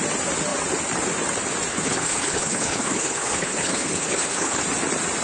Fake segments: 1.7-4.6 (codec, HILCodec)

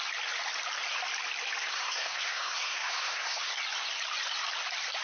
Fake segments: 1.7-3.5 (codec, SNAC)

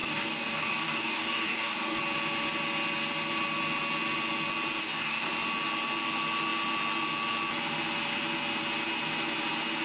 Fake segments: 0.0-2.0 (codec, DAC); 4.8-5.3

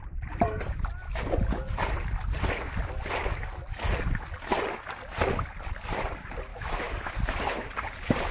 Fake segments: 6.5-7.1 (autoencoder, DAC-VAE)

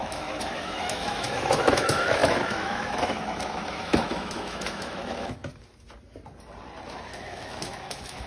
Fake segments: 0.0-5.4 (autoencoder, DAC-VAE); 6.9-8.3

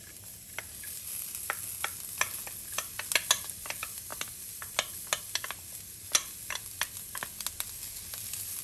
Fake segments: none

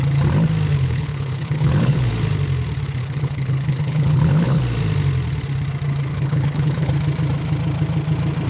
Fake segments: 0.7-2.1 (codec, HILCodec); 3.0-4.6; 6.1-6.9